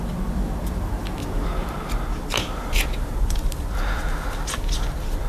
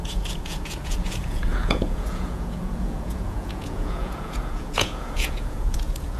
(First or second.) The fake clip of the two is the second